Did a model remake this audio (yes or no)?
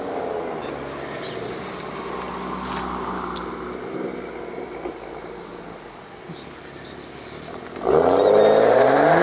no